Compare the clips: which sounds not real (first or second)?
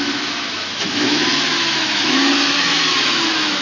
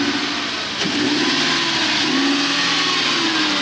first